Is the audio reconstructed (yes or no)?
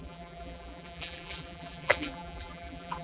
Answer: yes